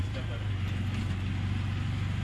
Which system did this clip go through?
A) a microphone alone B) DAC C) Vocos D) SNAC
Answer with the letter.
A